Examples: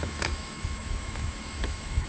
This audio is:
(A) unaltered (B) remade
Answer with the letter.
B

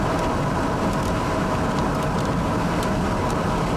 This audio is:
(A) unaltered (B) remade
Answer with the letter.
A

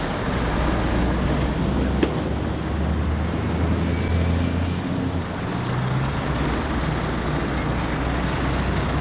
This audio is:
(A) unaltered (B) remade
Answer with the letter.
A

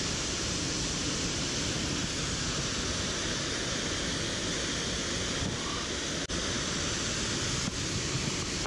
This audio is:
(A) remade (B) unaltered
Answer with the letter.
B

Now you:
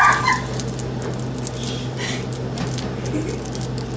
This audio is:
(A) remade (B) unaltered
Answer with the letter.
B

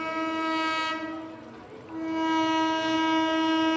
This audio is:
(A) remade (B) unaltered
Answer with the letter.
B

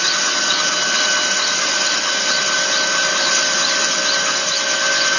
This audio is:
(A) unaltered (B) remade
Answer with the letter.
A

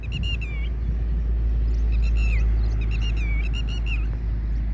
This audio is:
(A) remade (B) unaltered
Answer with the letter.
B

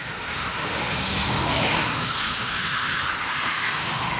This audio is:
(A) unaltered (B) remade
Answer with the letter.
B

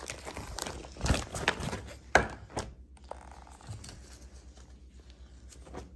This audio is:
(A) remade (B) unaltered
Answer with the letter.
B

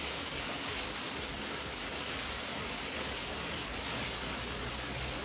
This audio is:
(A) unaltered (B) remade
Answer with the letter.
B